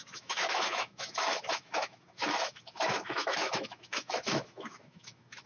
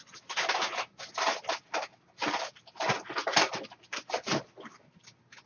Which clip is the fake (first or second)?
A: first